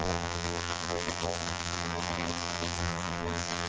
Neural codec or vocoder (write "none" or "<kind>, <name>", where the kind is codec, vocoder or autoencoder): vocoder, BigVGAN v2